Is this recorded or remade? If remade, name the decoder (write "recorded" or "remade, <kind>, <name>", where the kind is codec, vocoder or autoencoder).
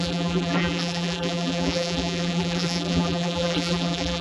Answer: remade, vocoder, BigVGAN v2